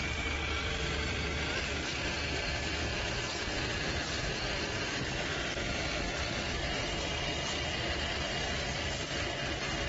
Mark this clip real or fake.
real